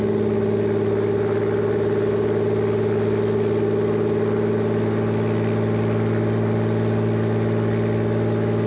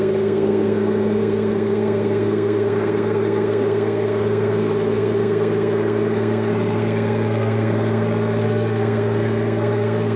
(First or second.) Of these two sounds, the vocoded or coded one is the second